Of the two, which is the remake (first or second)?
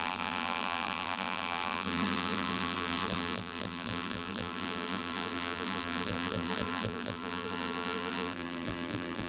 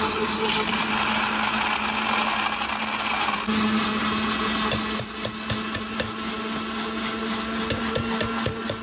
first